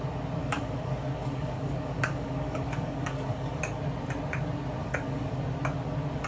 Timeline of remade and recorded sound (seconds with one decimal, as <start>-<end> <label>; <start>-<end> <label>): 0.0-0.4 recorded; 0.4-3.8 remade; 3.8-4.8 recorded; 4.8-5.4 remade; 5.4-6.3 recorded